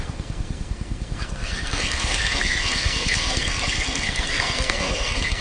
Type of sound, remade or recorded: remade